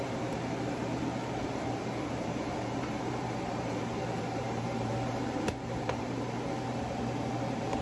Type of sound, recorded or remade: remade